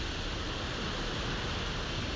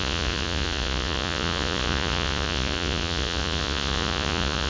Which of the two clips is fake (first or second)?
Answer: second